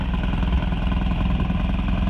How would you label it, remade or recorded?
recorded